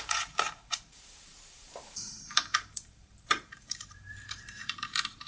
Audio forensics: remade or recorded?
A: remade